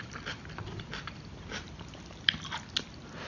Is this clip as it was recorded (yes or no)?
yes